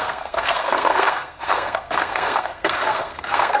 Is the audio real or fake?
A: fake